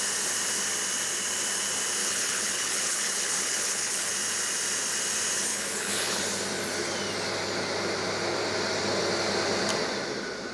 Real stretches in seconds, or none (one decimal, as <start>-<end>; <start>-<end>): 0.0-2.0; 4.1-5.5; 6.2-10.5